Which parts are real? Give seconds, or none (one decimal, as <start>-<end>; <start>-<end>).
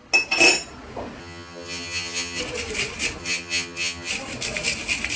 0.0-1.2; 2.4-3.2; 4.1-5.2